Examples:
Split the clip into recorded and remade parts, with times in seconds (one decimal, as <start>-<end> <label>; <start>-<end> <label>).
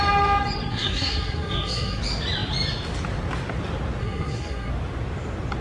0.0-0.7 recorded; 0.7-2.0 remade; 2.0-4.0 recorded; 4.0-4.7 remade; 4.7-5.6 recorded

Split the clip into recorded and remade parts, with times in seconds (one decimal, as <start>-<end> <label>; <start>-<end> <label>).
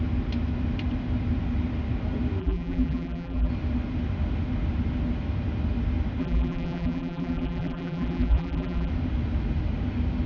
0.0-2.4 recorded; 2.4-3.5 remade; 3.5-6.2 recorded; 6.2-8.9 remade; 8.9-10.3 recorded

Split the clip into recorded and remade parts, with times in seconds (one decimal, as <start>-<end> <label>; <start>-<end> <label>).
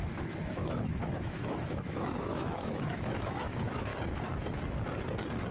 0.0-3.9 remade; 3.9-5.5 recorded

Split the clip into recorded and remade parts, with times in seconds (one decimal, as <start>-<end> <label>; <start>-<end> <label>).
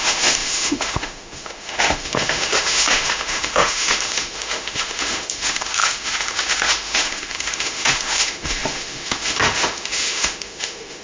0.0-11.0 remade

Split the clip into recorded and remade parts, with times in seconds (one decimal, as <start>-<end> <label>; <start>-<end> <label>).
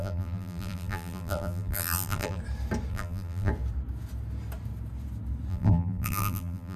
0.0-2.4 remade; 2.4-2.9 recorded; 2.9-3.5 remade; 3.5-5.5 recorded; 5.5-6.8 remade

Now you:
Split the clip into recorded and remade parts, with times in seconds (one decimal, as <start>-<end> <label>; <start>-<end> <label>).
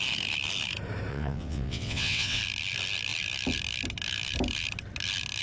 0.0-1.1 recorded; 1.1-2.4 remade; 2.4-5.4 recorded